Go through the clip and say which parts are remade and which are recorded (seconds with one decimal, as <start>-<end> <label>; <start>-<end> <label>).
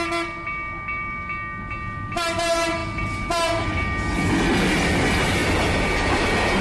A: 0.0-6.6 recorded